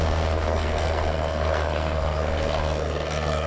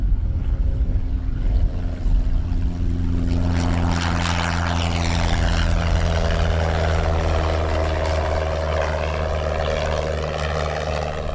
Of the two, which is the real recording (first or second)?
second